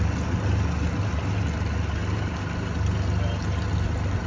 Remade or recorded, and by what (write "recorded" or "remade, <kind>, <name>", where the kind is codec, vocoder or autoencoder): recorded